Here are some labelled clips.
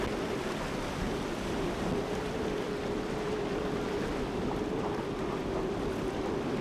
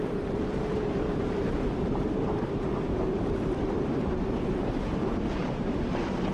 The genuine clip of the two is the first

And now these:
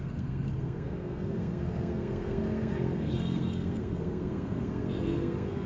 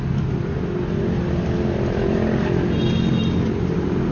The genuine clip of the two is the second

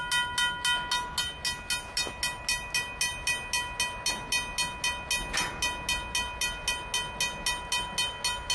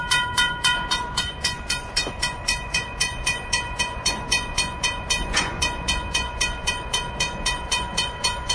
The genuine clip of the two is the first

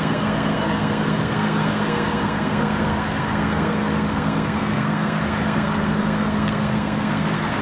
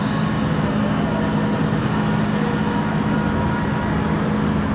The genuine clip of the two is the second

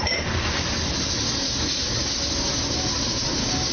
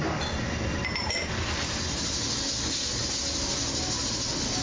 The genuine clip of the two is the second